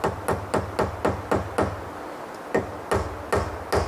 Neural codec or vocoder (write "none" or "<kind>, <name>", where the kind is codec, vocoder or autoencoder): none